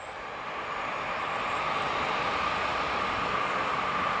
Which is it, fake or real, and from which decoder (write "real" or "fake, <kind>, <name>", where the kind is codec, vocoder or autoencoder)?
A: real